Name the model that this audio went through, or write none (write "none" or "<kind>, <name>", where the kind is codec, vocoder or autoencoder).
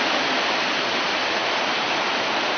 none